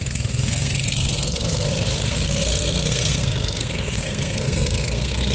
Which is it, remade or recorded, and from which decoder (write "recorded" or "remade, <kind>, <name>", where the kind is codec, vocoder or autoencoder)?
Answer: remade, codec, SNAC